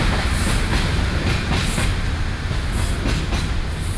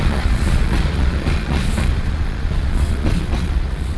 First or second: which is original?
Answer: first